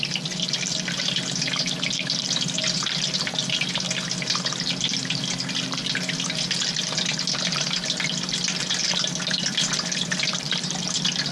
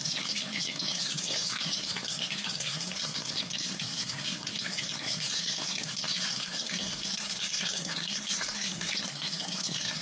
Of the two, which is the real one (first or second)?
first